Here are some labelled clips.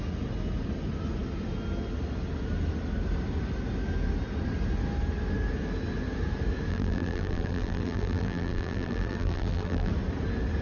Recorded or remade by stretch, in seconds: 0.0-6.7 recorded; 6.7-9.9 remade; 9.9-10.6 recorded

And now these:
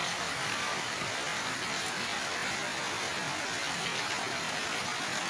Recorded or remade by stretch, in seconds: 0.0-1.1 remade; 1.1-5.3 recorded